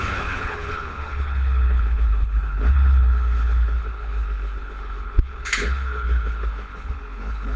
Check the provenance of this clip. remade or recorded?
remade